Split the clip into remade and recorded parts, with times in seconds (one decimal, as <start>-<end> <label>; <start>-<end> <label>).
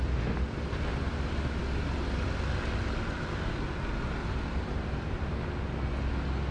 0.0-0.9 recorded; 0.9-1.6 remade; 1.6-4.2 recorded; 4.2-5.6 remade; 5.6-6.5 recorded